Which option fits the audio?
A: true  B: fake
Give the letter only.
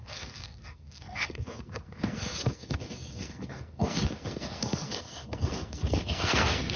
B